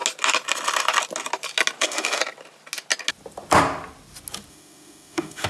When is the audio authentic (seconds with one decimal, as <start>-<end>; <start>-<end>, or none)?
0.0-1.8; 2.2-4.5

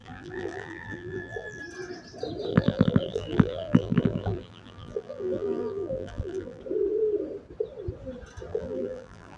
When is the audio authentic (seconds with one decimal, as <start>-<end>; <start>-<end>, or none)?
1.6-2.5; 6.6-8.5

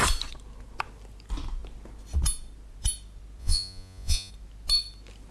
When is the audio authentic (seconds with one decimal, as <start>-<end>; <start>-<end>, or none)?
0.0-3.4; 4.3-5.3

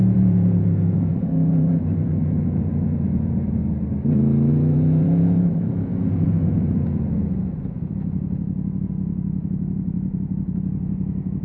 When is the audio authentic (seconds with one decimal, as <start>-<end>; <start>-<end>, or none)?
3.6-4.5

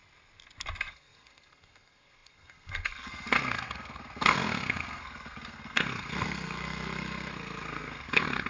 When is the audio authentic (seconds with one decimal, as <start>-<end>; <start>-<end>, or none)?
0.0-0.9

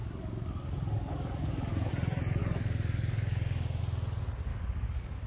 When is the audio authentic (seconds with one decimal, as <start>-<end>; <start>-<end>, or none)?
1.9-2.4; 3.8-4.5

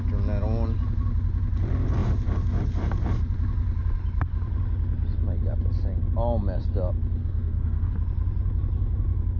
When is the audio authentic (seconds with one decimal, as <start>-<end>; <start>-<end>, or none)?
0.0-7.2; 7.9-9.4